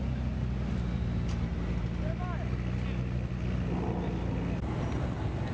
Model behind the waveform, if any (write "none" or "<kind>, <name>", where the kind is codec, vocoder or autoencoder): none